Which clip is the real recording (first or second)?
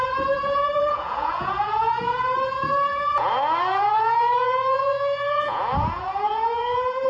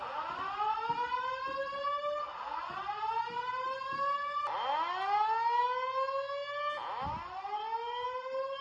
second